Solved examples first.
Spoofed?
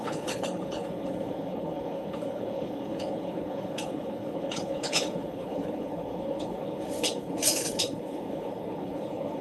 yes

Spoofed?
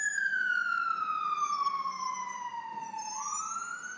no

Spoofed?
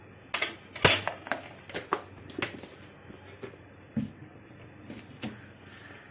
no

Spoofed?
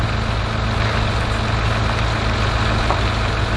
no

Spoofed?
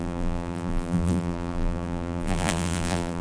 yes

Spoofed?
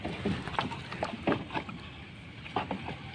no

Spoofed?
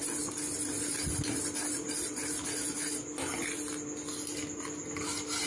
no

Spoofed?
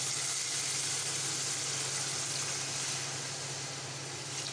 no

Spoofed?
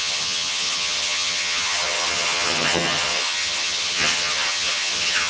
yes